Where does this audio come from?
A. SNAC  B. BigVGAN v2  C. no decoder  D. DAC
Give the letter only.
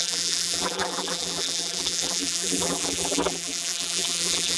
B